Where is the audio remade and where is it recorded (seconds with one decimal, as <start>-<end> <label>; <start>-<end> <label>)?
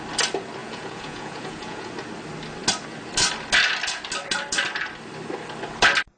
0.0-0.6 recorded; 0.6-1.9 remade; 1.9-6.2 recorded